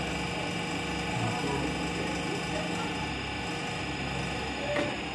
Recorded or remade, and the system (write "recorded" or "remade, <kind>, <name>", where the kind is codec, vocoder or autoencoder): recorded